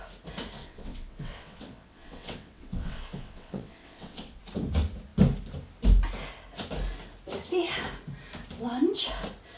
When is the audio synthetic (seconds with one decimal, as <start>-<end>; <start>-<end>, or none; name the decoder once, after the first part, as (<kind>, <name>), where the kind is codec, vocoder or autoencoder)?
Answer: 0.6-4.4 (vocoder, WaveNeXt)